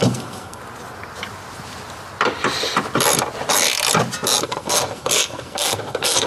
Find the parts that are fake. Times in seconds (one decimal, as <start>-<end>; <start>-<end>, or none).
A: 0.0-0.6; 4.4-6.3